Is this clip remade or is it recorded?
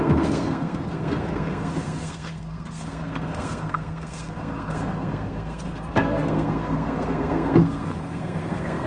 remade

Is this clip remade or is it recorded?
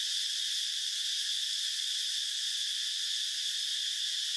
recorded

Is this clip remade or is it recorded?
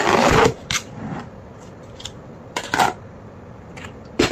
remade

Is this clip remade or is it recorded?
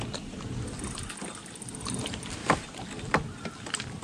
recorded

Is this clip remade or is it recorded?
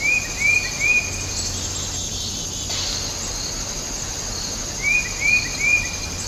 recorded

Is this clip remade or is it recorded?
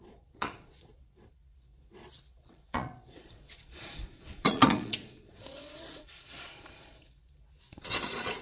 remade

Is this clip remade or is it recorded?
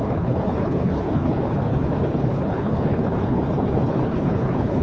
remade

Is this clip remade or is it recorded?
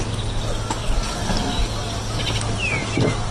recorded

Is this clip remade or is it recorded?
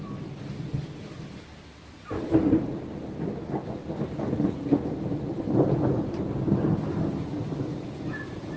recorded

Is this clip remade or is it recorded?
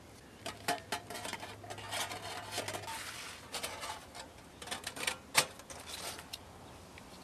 recorded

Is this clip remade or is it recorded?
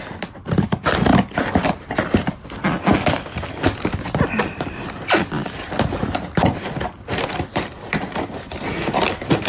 recorded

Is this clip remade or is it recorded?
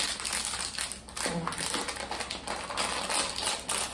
recorded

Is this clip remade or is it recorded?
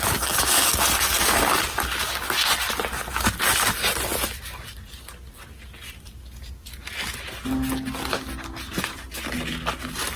recorded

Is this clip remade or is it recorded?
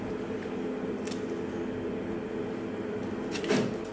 recorded